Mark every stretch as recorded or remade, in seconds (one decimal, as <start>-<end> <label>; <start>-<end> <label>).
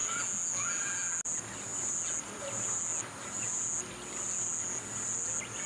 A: 0.0-5.7 recorded